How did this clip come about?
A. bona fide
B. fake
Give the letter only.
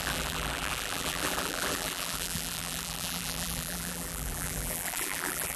B